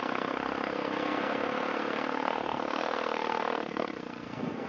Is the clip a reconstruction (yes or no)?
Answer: yes